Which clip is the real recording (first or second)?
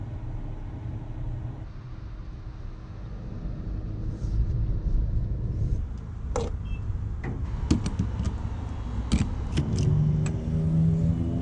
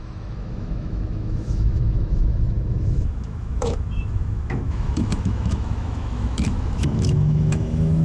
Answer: first